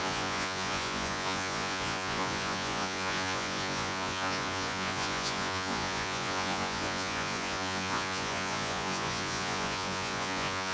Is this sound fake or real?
fake